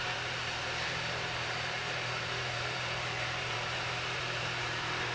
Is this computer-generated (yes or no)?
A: yes